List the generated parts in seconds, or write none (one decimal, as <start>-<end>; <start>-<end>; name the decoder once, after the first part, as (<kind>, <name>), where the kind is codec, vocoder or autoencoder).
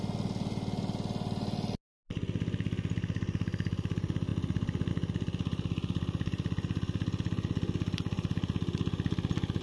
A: none